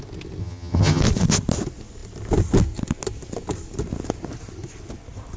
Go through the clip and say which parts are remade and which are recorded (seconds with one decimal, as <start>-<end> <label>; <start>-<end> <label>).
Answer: 0.0-0.4 recorded; 0.4-1.0 remade; 1.0-5.4 recorded